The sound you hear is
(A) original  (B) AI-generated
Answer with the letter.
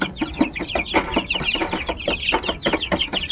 A